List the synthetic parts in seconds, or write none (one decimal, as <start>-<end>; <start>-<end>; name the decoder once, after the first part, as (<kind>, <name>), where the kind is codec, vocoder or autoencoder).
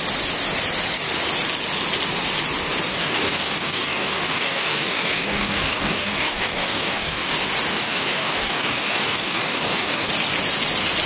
2.9-7.3 (codec, DAC); 7.7-10.1